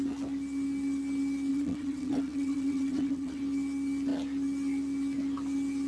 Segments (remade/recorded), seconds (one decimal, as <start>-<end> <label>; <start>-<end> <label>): 0.0-1.5 recorded; 1.5-3.4 remade; 3.4-5.9 recorded